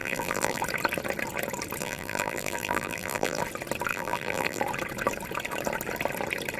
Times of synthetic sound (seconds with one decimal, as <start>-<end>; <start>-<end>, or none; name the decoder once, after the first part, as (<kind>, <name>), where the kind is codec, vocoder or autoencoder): 0.0-0.6 (vocoder, BigVGAN v2); 1.8-3.4; 3.9-4.6